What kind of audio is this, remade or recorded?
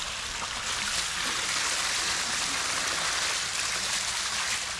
recorded